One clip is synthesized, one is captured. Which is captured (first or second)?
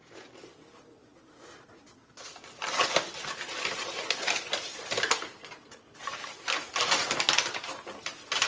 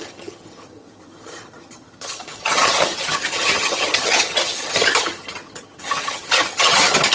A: first